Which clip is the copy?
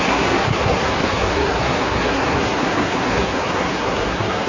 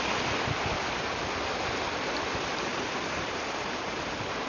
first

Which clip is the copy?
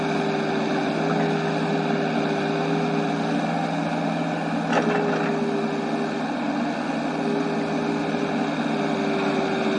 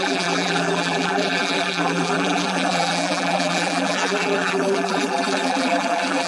second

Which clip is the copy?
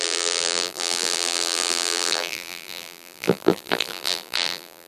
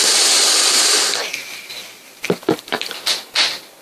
first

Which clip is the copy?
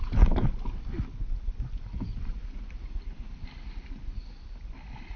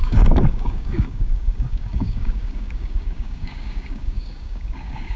second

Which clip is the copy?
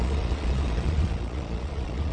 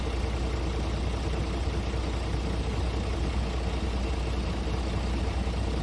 first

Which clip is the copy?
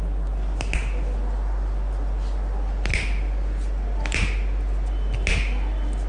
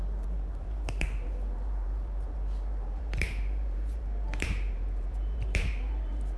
second